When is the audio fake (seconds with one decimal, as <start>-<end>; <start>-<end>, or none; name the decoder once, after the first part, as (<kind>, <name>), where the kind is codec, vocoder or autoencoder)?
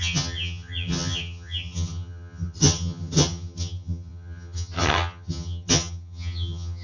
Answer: 0.0-6.8 (vocoder, HiFi-GAN)